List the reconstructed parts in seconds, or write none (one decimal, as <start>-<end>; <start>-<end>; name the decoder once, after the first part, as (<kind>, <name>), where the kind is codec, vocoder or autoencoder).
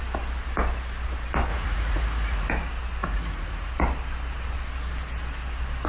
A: 1.5-2.5 (vocoder, Vocos); 3.0-3.7